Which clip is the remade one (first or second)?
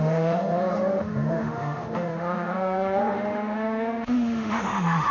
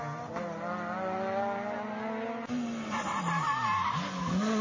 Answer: first